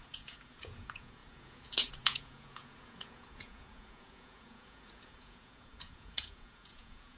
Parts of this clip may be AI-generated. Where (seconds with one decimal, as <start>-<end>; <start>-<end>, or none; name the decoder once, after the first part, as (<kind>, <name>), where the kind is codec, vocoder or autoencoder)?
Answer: 0.0-7.2 (vocoder, Vocos)

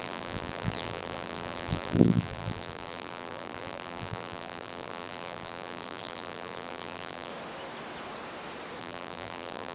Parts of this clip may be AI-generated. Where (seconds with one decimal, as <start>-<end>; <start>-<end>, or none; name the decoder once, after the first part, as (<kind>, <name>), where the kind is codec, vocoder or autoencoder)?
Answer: 0.0-7.3 (vocoder, BigVGAN v2); 8.8-9.7

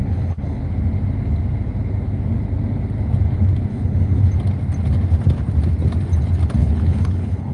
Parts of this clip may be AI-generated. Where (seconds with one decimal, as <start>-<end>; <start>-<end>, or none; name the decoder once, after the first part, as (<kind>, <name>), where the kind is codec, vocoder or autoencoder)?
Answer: 0.0-0.6 (codec, HILCodec); 3.7-4.2; 6.6-7.5

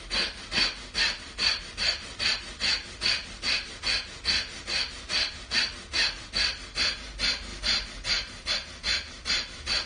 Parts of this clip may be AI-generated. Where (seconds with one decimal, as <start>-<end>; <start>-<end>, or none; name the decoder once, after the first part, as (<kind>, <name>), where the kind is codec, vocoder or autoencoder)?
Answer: none

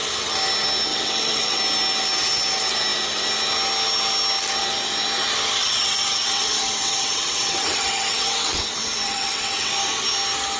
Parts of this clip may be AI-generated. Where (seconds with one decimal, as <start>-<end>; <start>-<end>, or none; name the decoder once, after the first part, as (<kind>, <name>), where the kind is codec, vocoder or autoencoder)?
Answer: 0.9-1.6 (vocoder, WaveNeXt); 5.6-9.7